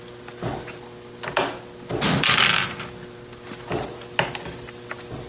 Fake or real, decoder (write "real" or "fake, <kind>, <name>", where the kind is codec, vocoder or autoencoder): real